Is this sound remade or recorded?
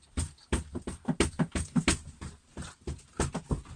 recorded